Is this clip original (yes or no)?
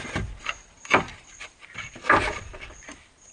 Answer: yes